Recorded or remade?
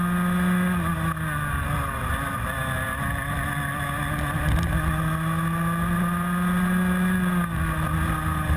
recorded